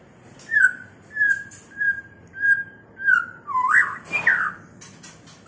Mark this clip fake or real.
real